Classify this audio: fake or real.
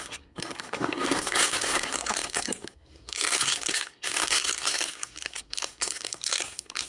fake